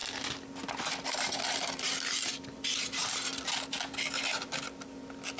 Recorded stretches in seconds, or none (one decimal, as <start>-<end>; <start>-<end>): 0.0-1.4; 3.3-5.4